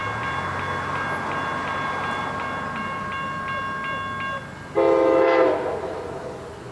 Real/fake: real